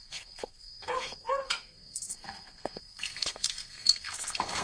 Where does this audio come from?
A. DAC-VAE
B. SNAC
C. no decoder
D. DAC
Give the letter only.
B